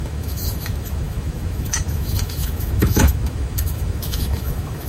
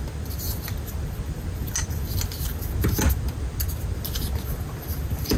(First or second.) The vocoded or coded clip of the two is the first